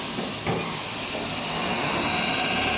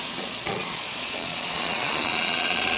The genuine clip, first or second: first